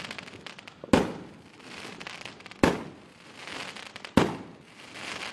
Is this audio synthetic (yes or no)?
no